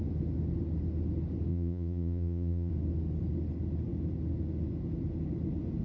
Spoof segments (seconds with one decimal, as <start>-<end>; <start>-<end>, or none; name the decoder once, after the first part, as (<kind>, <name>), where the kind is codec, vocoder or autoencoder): 1.5-2.7 (vocoder, Vocos)